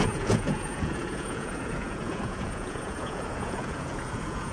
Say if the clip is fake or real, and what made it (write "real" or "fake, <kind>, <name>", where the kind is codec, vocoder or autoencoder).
fake, vocoder, Vocos